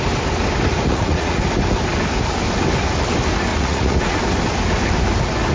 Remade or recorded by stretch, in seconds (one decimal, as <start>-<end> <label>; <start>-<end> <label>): 0.0-0.9 recorded; 0.9-1.4 remade; 1.4-3.5 recorded; 3.5-4.2 remade; 4.2-5.5 recorded

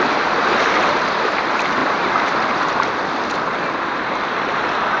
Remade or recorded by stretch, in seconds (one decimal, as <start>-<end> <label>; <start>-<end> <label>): 0.0-1.8 recorded; 1.8-2.7 remade; 2.7-5.0 recorded

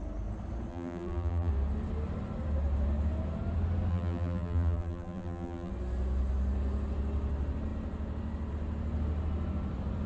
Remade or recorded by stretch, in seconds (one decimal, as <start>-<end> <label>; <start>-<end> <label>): 0.0-0.7 recorded; 0.7-1.5 remade; 1.5-3.9 recorded; 3.9-5.7 remade; 5.7-10.1 recorded

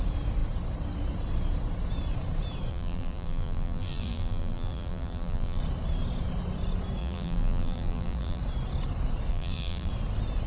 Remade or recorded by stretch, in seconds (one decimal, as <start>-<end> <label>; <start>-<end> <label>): 0.0-2.7 recorded; 2.7-5.6 remade; 5.6-7.0 recorded; 7.0-8.4 remade; 8.4-9.3 recorded; 9.3-9.9 remade; 9.9-10.5 recorded

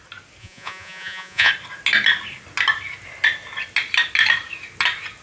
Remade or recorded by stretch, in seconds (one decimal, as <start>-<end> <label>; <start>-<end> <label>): 0.0-0.4 recorded; 0.4-1.5 remade; 1.5-5.2 recorded

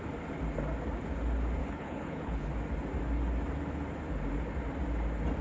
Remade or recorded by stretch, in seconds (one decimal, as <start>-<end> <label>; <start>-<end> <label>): 0.0-1.6 recorded; 1.6-2.5 remade; 2.5-5.4 recorded

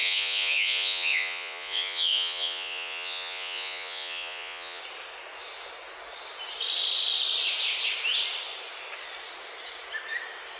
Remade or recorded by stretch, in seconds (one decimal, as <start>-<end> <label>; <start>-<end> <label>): 0.0-4.8 remade; 4.8-10.6 recorded